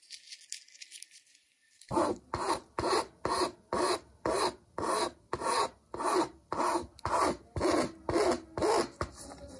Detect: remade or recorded recorded